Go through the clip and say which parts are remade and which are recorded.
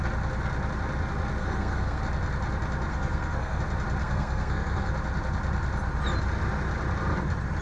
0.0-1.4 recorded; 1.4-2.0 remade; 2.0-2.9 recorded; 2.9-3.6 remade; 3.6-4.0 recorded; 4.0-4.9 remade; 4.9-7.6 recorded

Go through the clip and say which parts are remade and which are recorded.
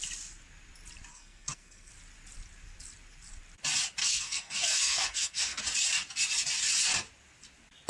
0.0-1.1 recorded; 1.1-1.9 remade; 1.9-4.0 recorded; 4.0-5.6 remade; 5.6-7.9 recorded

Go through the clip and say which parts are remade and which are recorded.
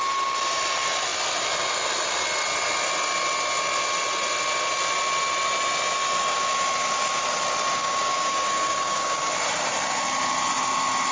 0.0-7.8 recorded; 7.8-9.3 remade; 9.3-11.1 recorded